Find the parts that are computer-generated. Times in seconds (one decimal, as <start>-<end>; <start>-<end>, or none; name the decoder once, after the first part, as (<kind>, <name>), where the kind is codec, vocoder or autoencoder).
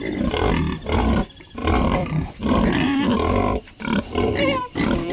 1.6-5.1 (vocoder, BigVGAN v2)